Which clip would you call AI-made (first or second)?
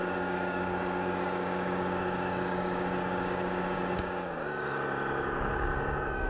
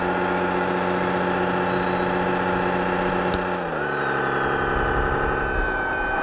first